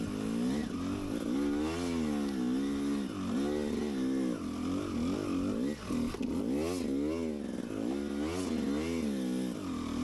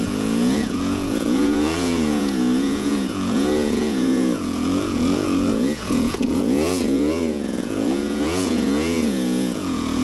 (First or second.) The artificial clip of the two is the second